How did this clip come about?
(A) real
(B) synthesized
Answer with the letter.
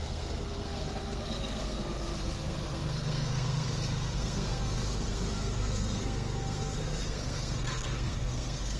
B